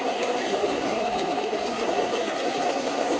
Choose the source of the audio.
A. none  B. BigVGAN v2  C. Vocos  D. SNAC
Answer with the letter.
D